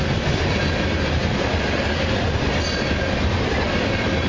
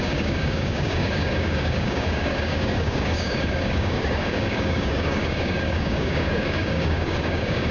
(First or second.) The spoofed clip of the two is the second